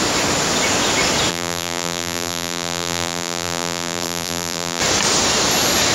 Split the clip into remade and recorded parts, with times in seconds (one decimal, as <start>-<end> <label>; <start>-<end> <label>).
0.0-1.3 recorded; 1.3-4.8 remade; 4.8-5.9 recorded